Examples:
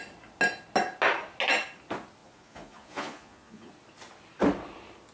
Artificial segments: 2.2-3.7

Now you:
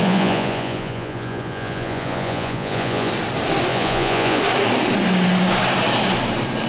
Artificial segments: 0.0-3.1; 3.7-4.4

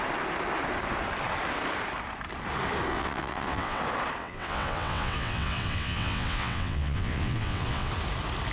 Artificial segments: 2.9-3.8; 4.2-7.9

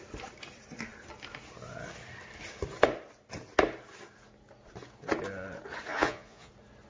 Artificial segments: 5.9-6.5